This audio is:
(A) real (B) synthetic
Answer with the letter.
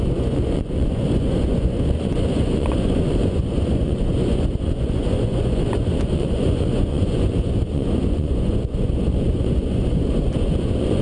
B